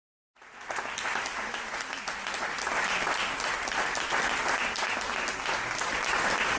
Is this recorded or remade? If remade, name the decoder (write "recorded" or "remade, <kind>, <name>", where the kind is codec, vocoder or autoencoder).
recorded